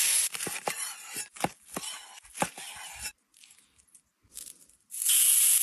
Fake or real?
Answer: real